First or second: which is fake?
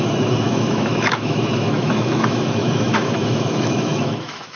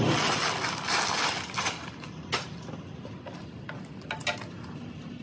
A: first